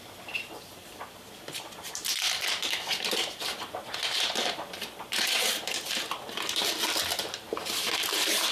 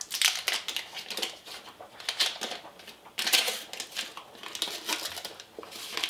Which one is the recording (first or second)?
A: second